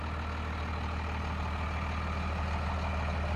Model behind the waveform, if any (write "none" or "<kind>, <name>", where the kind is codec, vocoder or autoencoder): none